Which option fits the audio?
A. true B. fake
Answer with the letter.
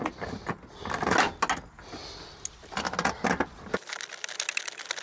A